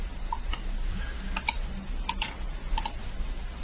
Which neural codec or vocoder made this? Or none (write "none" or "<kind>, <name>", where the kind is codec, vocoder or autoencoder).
none